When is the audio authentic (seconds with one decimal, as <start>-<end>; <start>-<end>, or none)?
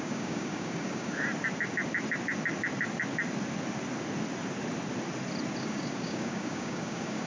1.3-5.6